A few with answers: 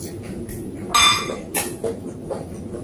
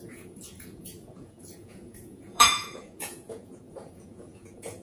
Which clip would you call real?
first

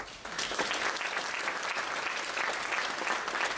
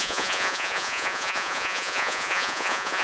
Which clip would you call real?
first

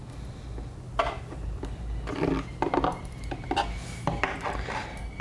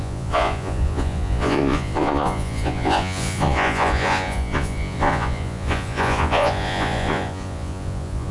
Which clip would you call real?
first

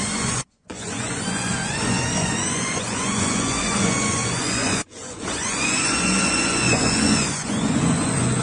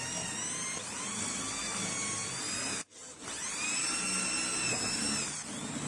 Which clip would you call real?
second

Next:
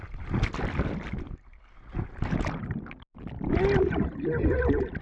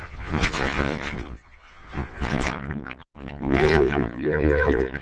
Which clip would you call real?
first